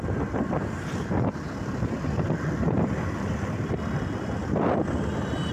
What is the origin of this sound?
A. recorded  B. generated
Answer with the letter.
A